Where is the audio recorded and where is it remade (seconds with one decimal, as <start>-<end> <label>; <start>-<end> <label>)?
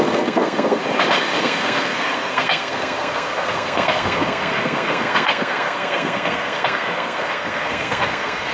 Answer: 0.0-0.8 remade; 0.8-1.4 recorded; 1.4-8.5 remade